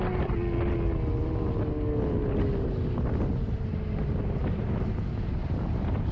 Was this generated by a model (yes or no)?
no